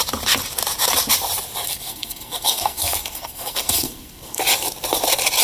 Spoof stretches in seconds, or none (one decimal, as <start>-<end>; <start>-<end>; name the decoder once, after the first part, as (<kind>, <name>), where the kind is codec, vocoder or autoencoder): 1.7-4.4 (codec, SNAC)